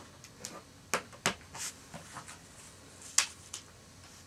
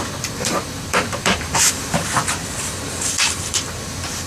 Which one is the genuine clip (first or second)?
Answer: first